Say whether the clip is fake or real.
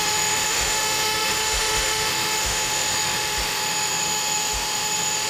fake